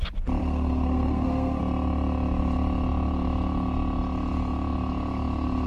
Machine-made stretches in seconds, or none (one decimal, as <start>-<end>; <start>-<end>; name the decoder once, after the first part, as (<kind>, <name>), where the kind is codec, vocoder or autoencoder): 0.4-1.6 (codec, SNAC)